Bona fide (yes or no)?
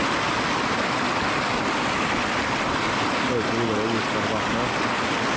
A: yes